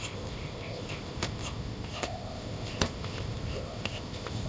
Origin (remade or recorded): remade